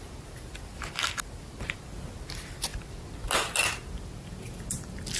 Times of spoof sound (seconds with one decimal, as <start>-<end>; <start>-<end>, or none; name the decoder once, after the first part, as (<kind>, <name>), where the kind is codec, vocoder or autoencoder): none